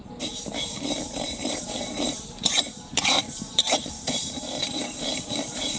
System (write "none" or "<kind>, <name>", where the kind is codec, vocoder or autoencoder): vocoder, BigVGAN v2